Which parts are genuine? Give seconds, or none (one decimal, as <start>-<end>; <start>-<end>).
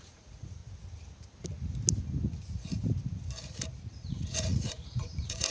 0.6-3.9